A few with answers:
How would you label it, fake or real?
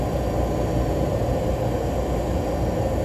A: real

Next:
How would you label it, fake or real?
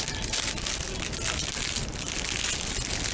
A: real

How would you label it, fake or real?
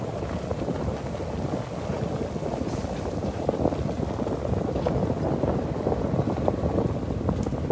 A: real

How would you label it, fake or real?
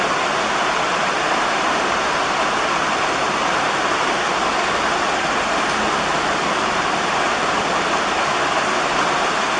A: fake